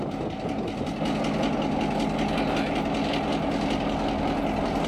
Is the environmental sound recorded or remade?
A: recorded